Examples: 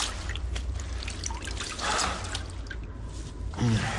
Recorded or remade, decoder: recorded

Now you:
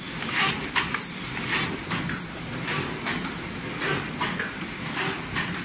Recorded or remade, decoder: recorded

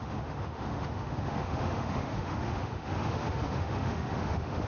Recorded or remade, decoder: remade, autoencoder, DAC-VAE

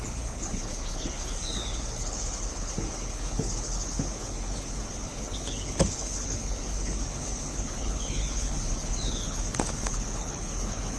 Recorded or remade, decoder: remade, codec, HILCodec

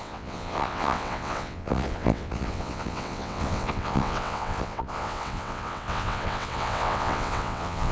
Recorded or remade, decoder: remade, vocoder, WaveNeXt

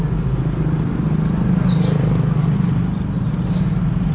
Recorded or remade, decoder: recorded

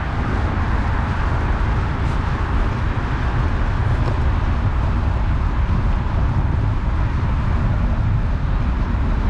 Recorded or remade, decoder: recorded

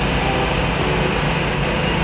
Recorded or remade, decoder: recorded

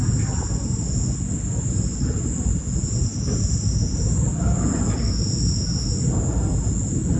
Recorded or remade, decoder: recorded